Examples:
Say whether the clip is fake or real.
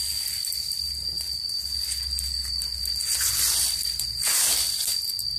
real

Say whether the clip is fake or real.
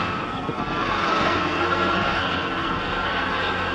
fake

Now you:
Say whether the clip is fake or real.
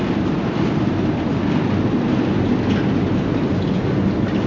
real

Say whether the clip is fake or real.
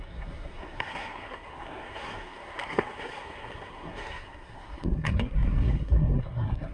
fake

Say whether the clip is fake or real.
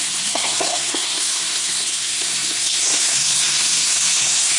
fake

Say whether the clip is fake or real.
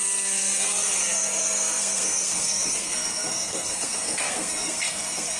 fake